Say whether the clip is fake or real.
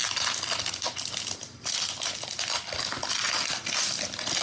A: real